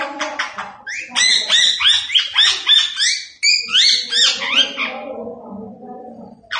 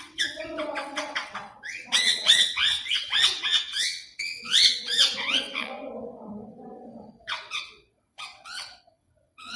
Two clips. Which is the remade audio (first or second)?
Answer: second